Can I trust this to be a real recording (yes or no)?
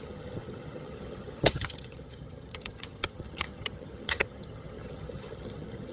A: no